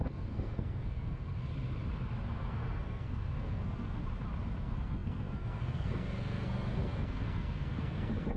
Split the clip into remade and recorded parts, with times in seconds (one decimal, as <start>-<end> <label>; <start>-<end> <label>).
0.0-1.5 remade; 1.5-2.3 recorded; 2.3-4.0 remade; 4.0-4.6 recorded; 4.6-8.4 remade